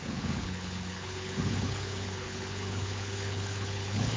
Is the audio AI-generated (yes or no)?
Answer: yes